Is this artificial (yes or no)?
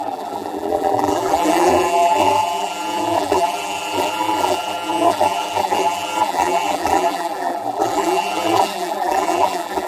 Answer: yes